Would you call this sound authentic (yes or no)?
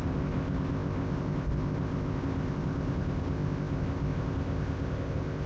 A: no